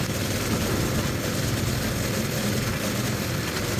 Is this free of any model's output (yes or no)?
no